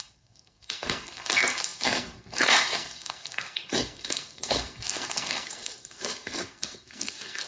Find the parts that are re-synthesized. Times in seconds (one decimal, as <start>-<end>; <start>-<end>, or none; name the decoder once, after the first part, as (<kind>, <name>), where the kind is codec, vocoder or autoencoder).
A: 0.0-7.5 (codec, SNAC)